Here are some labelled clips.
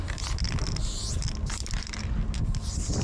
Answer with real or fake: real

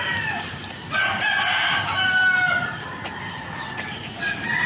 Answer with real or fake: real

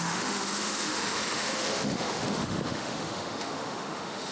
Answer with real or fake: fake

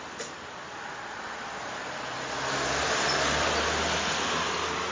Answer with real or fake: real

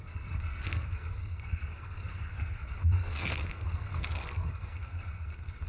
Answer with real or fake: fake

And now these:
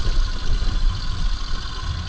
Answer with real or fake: real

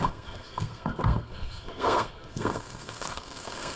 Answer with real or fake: fake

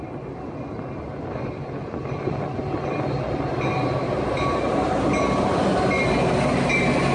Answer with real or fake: real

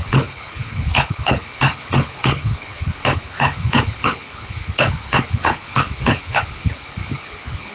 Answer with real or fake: fake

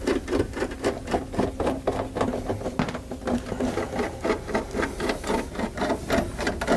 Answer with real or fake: real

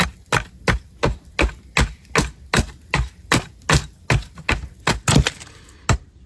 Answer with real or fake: real